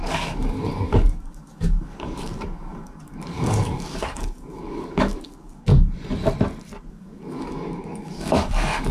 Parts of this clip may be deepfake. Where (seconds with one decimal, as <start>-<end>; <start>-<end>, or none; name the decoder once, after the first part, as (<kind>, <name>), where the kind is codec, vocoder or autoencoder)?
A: 0.0-5.7 (codec, DAC); 6.9-8.9